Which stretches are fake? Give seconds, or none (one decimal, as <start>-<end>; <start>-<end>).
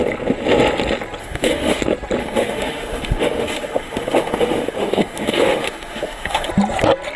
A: 1.2-1.8; 2.2-6.5